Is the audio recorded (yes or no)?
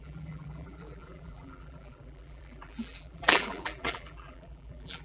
no